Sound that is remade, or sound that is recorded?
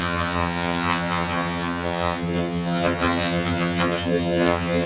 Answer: remade